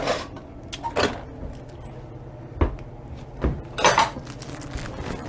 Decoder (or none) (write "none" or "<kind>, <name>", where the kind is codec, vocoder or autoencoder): none